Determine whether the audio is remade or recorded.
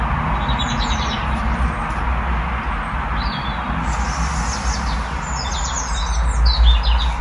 recorded